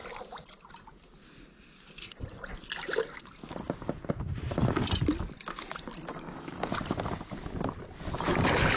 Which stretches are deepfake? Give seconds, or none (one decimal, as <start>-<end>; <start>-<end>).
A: 6.1-6.7